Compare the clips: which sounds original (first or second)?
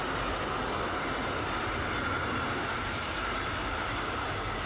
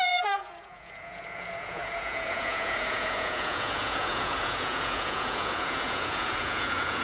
first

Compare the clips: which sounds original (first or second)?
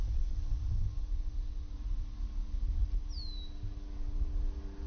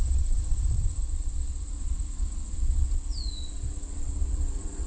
first